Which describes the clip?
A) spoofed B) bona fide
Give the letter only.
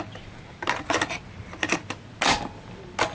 B